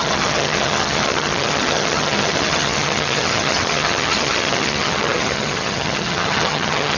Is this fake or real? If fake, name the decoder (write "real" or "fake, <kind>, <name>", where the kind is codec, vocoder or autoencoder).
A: fake, vocoder, HiFi-GAN